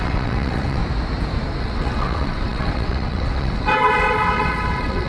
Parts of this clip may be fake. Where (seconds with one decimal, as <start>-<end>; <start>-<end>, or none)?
0.0-0.8; 1.6-5.1